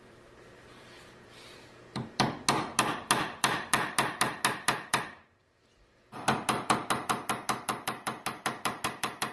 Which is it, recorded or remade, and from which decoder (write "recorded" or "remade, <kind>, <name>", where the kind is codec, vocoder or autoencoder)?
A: remade, vocoder, BigVGAN v2